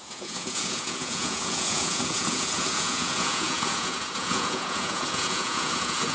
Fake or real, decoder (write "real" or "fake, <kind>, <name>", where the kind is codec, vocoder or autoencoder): fake, vocoder, Vocos